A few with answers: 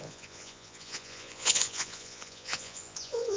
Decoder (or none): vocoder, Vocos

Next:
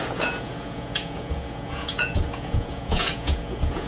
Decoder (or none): vocoder, Vocos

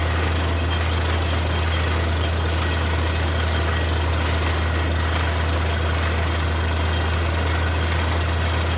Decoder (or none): none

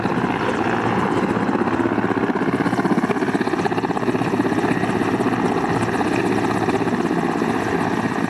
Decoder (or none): none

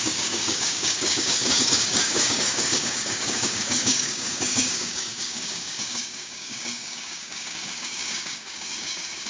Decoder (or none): codec, DAC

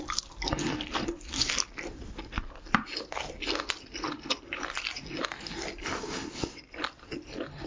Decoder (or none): none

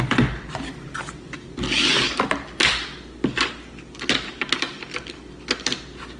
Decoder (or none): none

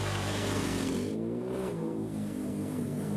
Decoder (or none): codec, SNAC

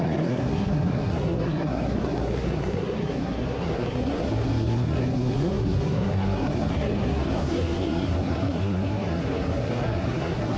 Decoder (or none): codec, SNAC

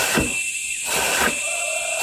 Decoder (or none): vocoder, BigVGAN v2